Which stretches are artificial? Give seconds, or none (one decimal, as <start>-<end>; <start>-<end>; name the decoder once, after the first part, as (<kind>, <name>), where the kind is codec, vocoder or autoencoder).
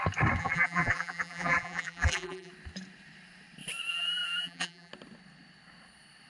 0.4-2.5 (vocoder, BigVGAN v2); 3.9-4.9